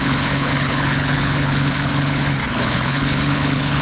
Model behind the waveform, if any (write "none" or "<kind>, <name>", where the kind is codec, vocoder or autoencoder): codec, HILCodec